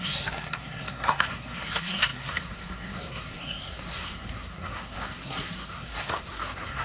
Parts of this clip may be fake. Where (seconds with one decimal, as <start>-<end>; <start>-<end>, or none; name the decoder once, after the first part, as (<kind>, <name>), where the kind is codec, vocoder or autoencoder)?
0.0-6.8 (codec, SNAC)